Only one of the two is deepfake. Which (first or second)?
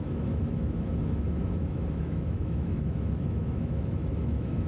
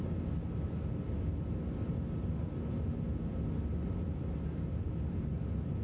first